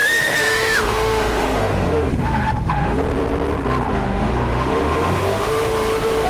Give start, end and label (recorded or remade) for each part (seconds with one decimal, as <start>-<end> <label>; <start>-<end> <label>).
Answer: 0.0-3.0 remade; 3.0-3.9 recorded; 3.9-6.3 remade